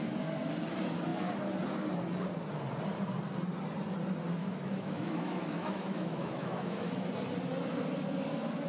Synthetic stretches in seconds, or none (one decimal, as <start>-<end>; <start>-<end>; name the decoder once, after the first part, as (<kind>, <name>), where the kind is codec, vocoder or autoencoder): 4.4-7.1 (autoencoder, DAC-VAE)

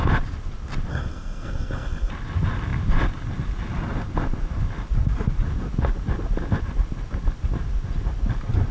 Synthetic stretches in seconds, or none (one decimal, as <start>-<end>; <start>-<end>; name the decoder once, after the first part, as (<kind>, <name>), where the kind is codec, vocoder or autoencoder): 0.9-2.1 (codec, SNAC)

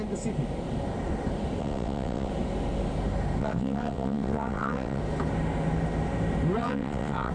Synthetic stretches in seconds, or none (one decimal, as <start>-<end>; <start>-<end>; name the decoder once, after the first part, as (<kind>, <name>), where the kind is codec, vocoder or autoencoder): 1.6-2.3 (vocoder, WaveNeXt); 3.4-5.0; 6.6-7.3

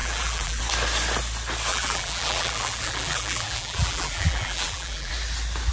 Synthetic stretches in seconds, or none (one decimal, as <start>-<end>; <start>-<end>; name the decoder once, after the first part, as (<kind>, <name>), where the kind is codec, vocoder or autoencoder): 0.0-0.6 (vocoder, BigVGAN v2); 1.7-5.1

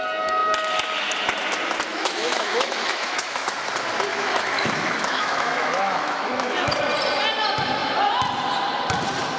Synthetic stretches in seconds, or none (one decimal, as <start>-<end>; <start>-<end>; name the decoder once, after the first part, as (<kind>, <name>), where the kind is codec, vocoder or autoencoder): 1.9-3.6 (autoencoder, DAC-VAE); 4.1-6.7

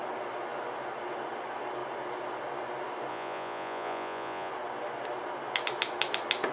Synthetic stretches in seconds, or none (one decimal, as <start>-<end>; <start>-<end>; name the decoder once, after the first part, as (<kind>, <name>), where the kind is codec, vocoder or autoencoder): 3.1-4.5 (vocoder, Vocos)